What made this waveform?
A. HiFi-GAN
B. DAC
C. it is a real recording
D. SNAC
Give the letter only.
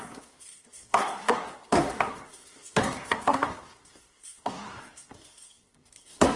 D